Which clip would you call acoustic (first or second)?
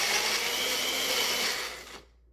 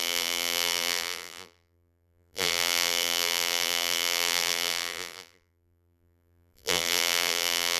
first